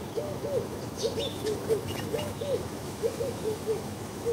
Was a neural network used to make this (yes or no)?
yes